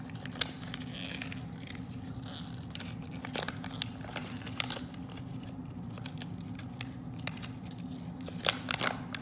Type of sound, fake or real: real